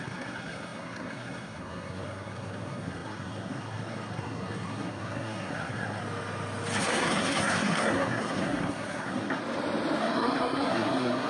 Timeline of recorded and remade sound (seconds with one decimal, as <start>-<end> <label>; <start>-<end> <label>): 0.0-6.0 remade; 6.0-6.8 recorded; 6.8-9.4 remade; 9.4-10.0 recorded; 10.0-11.3 remade